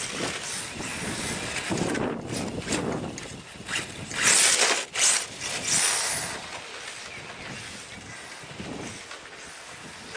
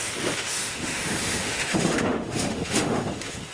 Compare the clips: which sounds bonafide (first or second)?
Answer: first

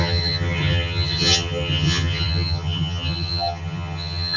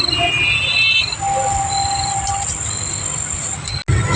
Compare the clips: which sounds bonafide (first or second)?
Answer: second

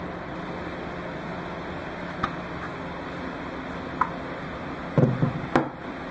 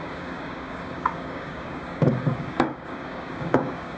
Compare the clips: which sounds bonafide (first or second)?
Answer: first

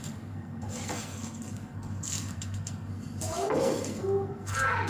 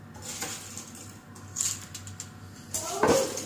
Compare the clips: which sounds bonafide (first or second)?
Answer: second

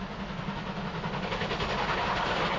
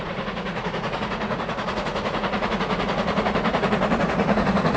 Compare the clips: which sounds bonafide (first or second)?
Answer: first